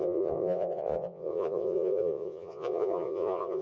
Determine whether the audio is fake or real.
fake